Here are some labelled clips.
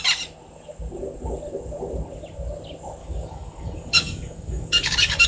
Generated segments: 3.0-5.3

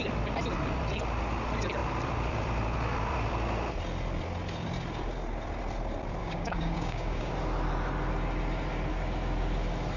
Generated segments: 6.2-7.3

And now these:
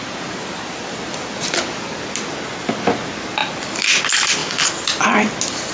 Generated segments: none